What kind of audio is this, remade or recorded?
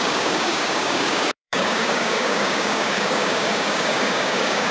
remade